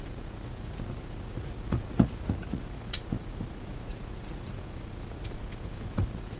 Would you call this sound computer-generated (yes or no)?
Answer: yes